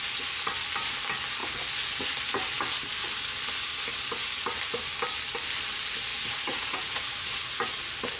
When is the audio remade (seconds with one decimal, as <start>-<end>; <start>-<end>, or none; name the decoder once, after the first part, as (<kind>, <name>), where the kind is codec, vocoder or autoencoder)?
6.1-7.3 (vocoder, Vocos)